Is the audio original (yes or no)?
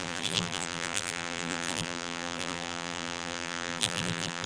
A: no